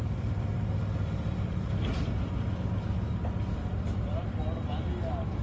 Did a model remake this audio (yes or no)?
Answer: no